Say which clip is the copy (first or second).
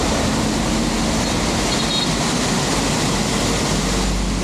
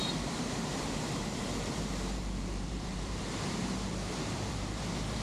second